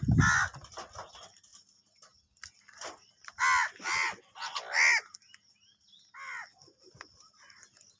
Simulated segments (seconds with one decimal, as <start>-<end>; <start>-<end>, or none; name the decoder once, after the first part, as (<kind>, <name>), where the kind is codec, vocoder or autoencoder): none